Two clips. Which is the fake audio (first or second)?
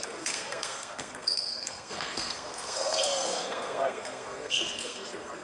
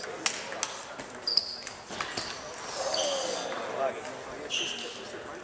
first